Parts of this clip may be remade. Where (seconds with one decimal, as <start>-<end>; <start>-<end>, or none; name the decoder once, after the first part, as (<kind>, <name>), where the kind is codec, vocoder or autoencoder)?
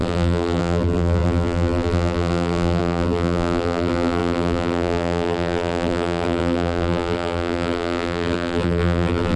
0.0-9.4 (vocoder, BigVGAN v2)